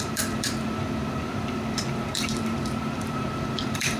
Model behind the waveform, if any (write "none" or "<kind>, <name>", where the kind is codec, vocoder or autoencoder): vocoder, BigVGAN v2